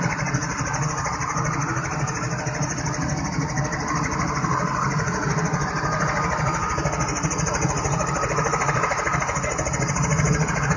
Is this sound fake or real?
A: real